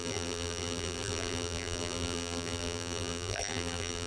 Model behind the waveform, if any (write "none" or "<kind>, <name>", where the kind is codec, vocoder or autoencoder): vocoder, BigVGAN v2